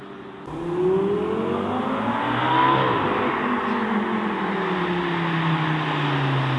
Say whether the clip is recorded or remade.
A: recorded